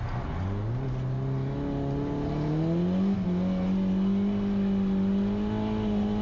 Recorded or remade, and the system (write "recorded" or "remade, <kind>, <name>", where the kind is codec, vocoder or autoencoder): recorded